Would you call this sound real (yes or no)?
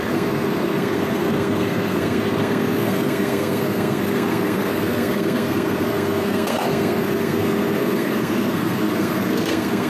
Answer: no